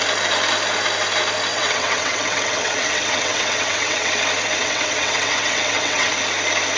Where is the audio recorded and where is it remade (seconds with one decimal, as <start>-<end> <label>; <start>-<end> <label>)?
0.0-1.5 recorded; 1.5-4.1 remade; 4.1-4.6 recorded; 4.6-6.1 remade; 6.1-6.8 recorded